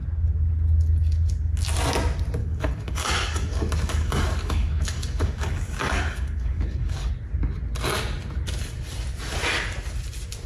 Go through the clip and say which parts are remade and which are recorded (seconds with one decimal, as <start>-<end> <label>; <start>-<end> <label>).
0.0-2.4 recorded; 2.4-7.1 remade; 7.1-10.5 recorded